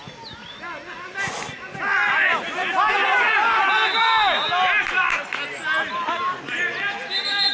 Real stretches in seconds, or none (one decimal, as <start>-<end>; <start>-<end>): 0.0-7.5